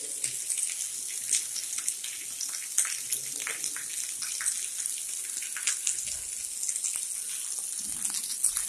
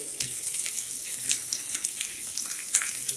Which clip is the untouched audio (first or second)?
first